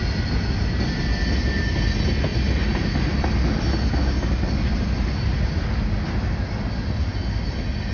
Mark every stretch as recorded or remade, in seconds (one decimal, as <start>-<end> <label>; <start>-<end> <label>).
0.0-7.9 recorded